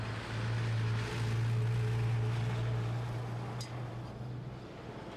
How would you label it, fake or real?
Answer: real